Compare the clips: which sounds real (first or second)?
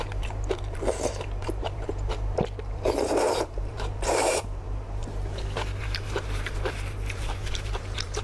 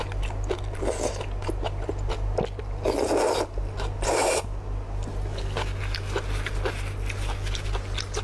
second